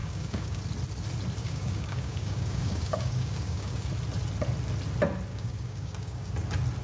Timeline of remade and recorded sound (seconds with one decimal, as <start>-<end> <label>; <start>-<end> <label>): 0.0-0.6 remade; 0.6-1.4 recorded; 1.4-3.9 remade; 3.9-5.3 recorded; 5.3-6.3 remade; 6.3-6.8 recorded